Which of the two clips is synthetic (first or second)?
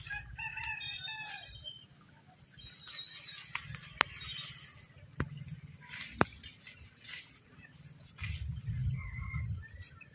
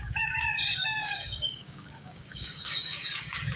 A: second